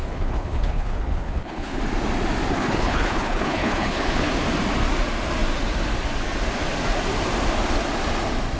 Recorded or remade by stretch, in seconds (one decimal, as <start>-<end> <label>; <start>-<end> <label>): 0.0-1.8 remade; 1.8-2.5 recorded; 2.5-4.3 remade; 4.3-8.6 recorded